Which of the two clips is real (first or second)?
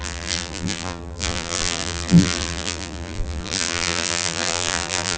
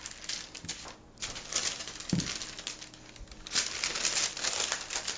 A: second